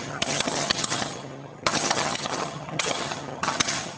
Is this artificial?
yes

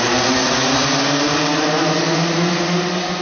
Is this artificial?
no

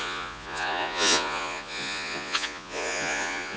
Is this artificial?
yes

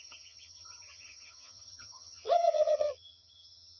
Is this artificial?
yes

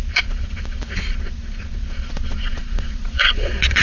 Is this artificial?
yes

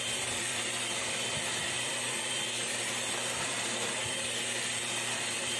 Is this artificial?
yes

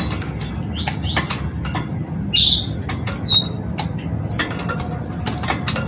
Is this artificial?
no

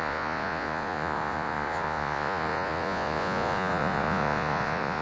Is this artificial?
yes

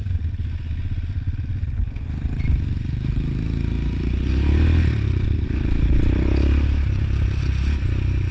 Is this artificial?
no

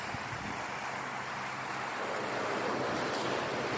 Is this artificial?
no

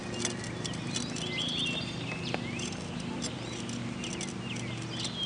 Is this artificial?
no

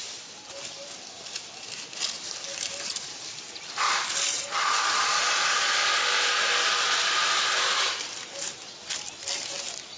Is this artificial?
no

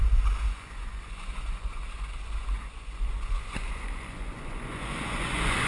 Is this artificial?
yes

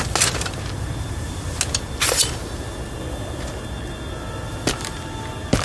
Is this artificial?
no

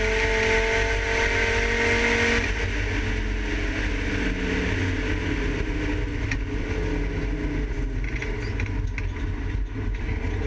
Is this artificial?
no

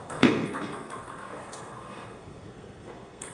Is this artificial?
yes